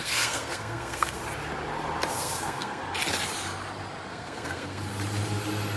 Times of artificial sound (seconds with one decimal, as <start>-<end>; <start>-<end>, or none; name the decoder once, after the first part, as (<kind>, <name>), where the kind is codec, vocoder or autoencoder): 0.0-1.2 (codec, SNAC); 2.1-2.8; 4.1-4.9